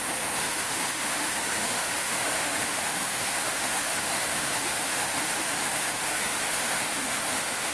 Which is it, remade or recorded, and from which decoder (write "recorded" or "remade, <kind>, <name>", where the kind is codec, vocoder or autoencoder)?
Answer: remade, autoencoder, DAC-VAE